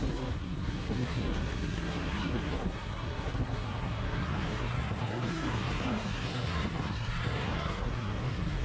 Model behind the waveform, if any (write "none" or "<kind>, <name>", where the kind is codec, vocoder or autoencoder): codec, SNAC